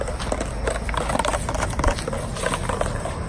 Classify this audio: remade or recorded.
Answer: recorded